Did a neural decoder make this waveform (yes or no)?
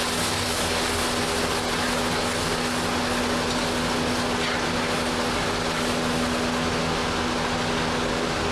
no